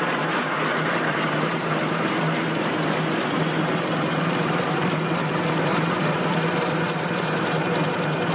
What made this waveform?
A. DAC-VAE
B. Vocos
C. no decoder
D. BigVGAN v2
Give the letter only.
D